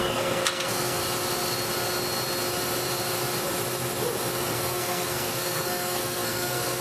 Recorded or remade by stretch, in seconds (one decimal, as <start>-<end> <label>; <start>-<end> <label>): 0.0-1.0 remade; 1.0-4.3 recorded; 4.3-6.8 remade